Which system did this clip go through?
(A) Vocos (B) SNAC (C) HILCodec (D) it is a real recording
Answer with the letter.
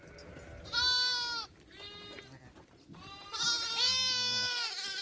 D